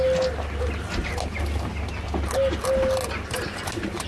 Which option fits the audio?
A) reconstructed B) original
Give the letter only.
B